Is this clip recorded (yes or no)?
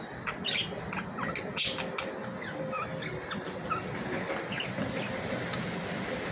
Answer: yes